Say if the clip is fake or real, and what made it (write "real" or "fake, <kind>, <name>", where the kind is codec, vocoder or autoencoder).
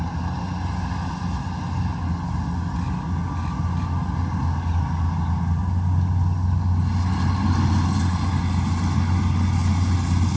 real